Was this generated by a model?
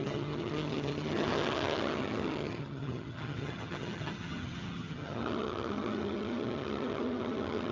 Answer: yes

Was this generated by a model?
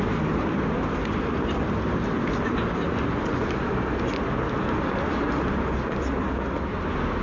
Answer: no